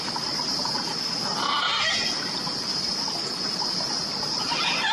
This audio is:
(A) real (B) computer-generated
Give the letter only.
A